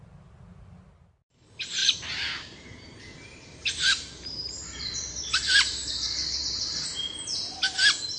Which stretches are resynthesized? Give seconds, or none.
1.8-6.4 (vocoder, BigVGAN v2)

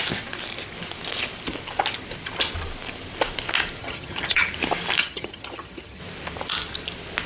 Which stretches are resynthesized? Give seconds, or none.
3.8-4.5 (vocoder, HiFi-GAN); 5.0-6.0